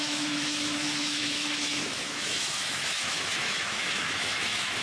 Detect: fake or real fake